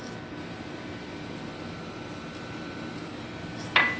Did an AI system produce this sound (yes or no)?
no